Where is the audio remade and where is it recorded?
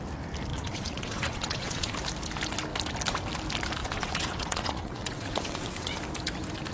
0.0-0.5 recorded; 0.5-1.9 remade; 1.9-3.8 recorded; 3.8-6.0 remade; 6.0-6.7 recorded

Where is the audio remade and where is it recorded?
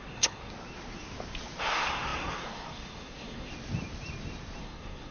0.0-0.5 remade; 0.5-1.6 recorded; 1.6-3.5 remade; 3.5-4.6 recorded; 4.6-5.1 remade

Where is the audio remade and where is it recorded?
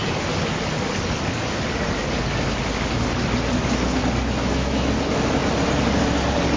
0.0-4.4 recorded; 4.4-4.9 remade; 4.9-6.6 recorded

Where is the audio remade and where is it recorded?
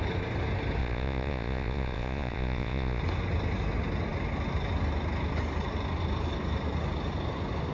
0.0-0.8 recorded; 0.8-3.0 remade; 3.0-7.7 recorded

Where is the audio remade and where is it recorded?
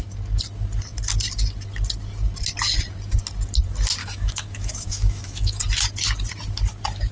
0.0-4.0 recorded; 4.0-5.6 remade; 5.6-7.1 recorded